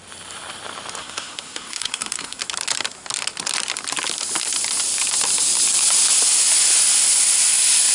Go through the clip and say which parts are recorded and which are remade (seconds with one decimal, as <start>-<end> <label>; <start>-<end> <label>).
0.0-1.0 recorded; 1.0-2.4 remade; 2.4-7.9 recorded